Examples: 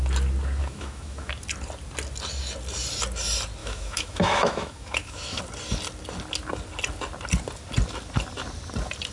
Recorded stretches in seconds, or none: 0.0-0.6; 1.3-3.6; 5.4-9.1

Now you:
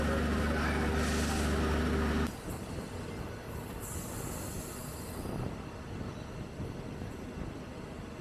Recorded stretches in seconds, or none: 0.0-8.2

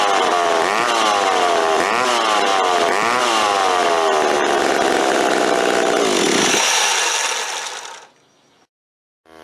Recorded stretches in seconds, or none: 0.0-9.4

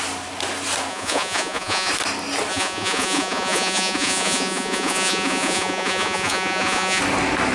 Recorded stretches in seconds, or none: 0.0-0.9; 1.9-2.5; 7.0-7.5